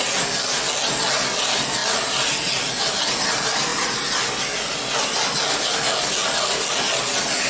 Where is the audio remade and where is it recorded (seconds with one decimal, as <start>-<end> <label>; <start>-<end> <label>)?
0.0-7.5 recorded